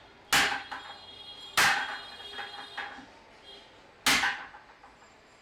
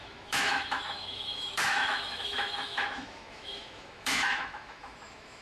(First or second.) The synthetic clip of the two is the second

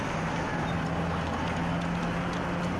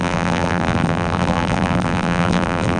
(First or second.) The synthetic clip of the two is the second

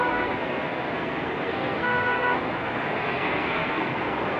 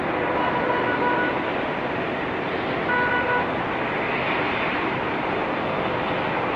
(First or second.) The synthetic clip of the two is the first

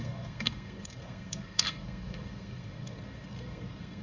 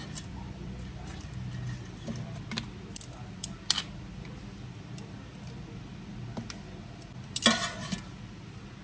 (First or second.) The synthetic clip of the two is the first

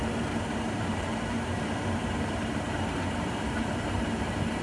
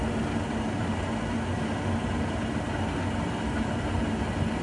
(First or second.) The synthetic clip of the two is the first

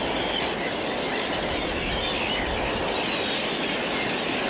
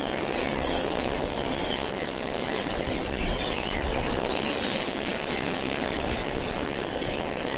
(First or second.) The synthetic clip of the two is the second